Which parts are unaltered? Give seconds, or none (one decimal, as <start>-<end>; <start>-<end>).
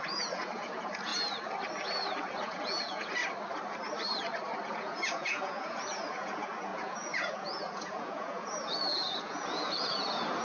1.1-2.2; 3.2-4.7